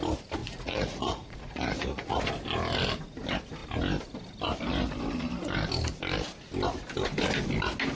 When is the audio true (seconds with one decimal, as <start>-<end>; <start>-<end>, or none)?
0.0-0.4; 2.2-7.9